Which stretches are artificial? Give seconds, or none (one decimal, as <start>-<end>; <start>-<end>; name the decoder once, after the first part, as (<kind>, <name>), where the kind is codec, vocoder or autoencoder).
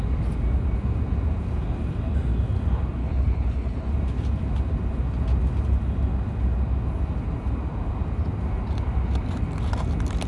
3.0-3.9 (codec, HILCodec)